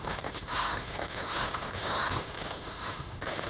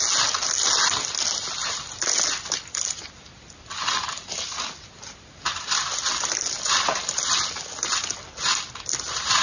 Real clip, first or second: second